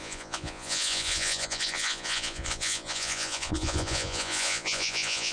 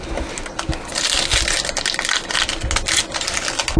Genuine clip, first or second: second